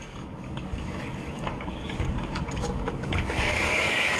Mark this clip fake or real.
fake